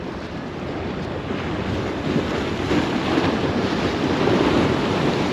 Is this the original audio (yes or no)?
yes